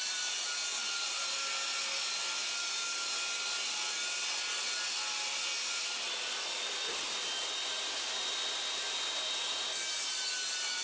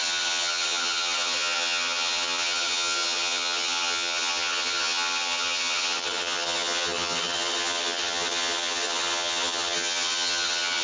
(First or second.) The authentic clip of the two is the first